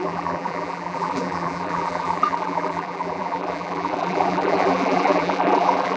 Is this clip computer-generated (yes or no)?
yes